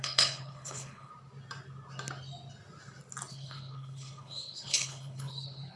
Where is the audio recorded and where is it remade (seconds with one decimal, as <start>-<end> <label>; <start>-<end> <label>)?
0.0-1.1 remade; 1.1-3.3 recorded; 3.3-5.8 remade